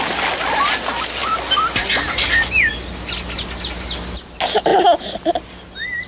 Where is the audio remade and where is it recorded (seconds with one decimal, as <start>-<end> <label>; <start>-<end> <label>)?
0.0-6.1 recorded